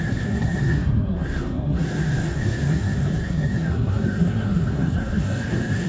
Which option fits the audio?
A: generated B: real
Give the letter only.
A